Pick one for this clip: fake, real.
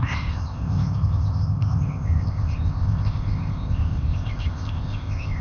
fake